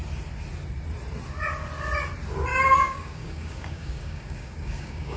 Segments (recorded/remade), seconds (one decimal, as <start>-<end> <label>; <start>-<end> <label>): 0.0-2.5 recorded; 2.5-5.2 remade